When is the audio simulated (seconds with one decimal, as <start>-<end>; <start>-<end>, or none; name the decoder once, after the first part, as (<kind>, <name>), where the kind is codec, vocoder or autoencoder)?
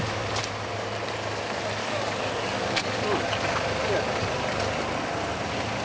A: 1.8-3.2 (codec, DAC)